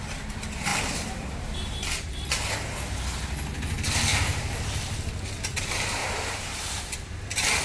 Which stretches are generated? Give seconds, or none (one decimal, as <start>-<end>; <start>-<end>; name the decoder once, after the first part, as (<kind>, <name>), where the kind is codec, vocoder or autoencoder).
4.1-5.6 (vocoder, BigVGAN v2); 6.0-6.7